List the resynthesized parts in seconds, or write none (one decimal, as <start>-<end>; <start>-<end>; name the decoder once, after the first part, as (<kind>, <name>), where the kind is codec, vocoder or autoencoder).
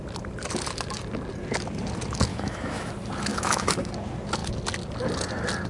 2.3-2.9 (autoencoder, DAC-VAE); 3.3-3.9